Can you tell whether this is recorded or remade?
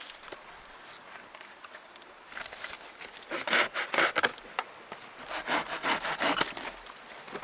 recorded